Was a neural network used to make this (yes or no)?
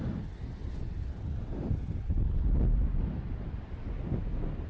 no